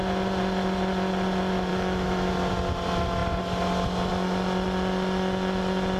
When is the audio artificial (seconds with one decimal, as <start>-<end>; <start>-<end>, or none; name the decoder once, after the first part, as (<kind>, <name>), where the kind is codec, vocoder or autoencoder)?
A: 1.7-2.3 (autoencoder, DAC-VAE)